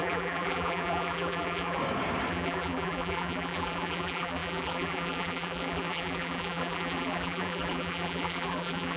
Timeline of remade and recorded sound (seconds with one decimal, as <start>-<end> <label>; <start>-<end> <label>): 0.0-1.8 remade; 1.8-2.3 recorded; 2.3-9.0 remade